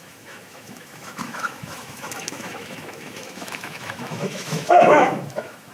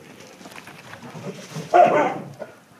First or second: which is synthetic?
first